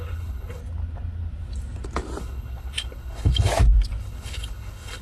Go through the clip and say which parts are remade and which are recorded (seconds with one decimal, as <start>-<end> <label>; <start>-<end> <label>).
0.0-0.6 remade; 0.6-2.2 recorded; 2.2-3.5 remade; 3.5-4.0 recorded; 4.0-5.0 remade